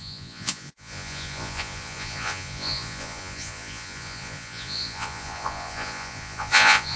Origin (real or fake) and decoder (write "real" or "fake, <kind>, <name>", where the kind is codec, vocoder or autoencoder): fake, vocoder, Vocos